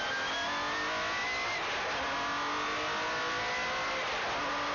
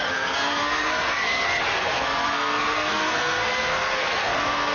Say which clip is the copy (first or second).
second